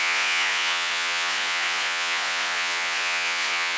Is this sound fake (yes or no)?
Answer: yes